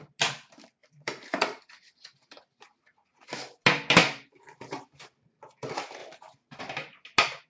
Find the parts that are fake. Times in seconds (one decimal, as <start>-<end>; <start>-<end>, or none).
0.8-2.8; 4.0-4.8; 6.0-6.6